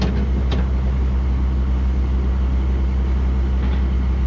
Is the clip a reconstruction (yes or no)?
no